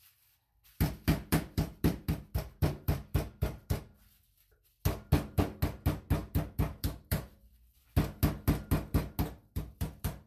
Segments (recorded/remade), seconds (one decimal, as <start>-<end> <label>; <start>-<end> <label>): 0.0-0.4 recorded; 0.4-3.8 remade; 3.8-6.2 recorded; 6.2-7.5 remade; 7.5-9.4 recorded; 9.4-10.3 remade